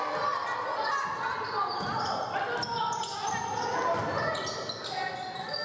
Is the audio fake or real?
real